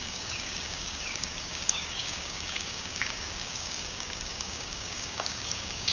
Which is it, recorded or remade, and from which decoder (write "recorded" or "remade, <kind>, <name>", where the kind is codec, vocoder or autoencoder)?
remade, codec, DAC